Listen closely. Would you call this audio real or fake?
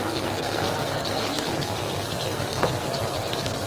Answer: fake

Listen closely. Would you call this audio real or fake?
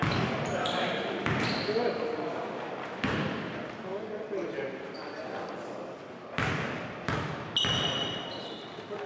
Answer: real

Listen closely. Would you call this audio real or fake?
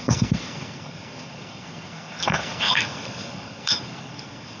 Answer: fake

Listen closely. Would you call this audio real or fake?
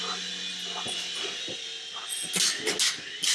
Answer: real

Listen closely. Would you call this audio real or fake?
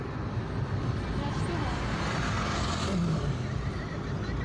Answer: real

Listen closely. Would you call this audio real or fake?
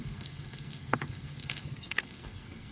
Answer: fake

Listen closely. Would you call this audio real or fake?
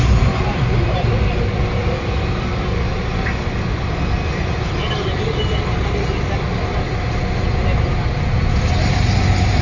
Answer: real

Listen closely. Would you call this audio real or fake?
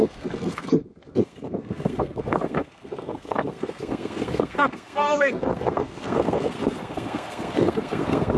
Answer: fake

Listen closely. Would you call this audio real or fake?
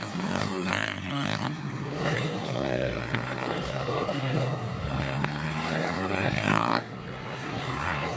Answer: fake